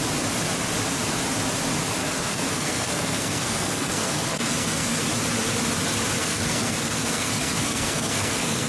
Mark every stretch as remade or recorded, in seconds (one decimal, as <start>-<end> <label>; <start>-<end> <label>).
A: 0.0-2.0 recorded; 2.0-5.0 remade; 5.0-6.2 recorded; 6.2-8.7 remade